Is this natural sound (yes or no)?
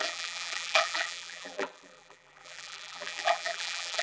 no